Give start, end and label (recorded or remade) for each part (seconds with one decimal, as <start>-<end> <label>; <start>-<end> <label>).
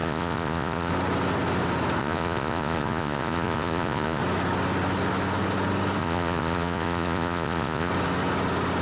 0.0-0.9 remade; 0.9-2.0 recorded; 2.0-4.2 remade; 4.2-6.0 recorded; 6.0-7.9 remade; 7.9-8.8 recorded